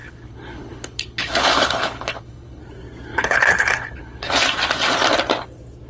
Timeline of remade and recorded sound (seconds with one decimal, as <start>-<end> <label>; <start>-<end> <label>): 0.0-2.6 remade; 2.6-3.1 recorded; 3.1-4.3 remade; 4.3-5.9 recorded